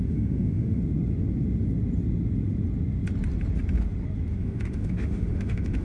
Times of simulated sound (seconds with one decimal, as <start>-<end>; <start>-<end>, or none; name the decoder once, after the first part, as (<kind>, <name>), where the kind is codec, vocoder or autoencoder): 0.0-0.8 (autoencoder, DAC-VAE); 4.3-5.8